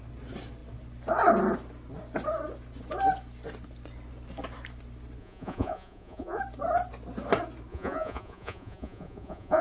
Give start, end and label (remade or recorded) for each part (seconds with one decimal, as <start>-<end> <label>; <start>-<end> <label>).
0.0-5.2 recorded; 5.2-6.4 remade; 6.4-7.7 recorded; 7.7-9.6 remade